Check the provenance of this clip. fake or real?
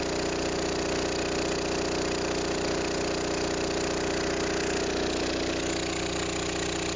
real